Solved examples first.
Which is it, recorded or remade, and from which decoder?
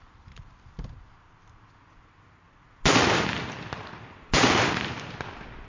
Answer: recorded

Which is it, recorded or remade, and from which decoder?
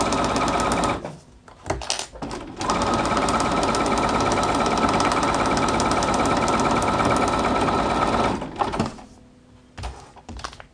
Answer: recorded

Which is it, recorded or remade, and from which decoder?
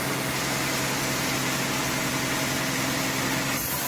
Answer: recorded